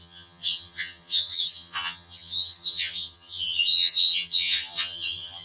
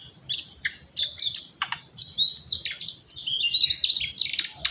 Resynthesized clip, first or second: first